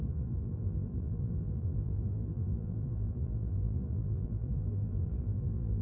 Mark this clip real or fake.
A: fake